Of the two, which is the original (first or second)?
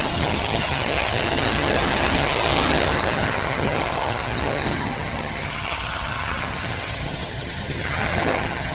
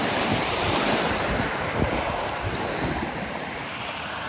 second